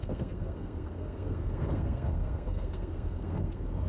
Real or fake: fake